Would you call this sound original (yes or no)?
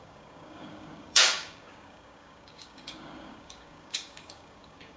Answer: no